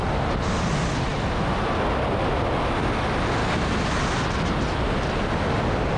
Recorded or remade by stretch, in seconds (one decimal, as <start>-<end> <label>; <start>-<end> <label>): 0.0-6.0 recorded